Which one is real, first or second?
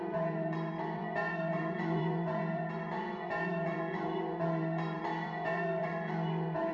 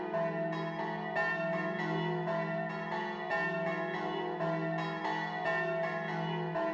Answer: second